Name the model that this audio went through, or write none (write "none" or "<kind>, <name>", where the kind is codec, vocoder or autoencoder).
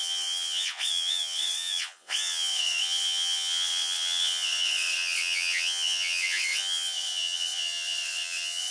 vocoder, WaveNeXt